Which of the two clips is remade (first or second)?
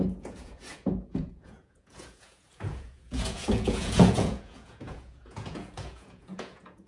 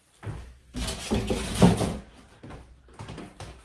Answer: first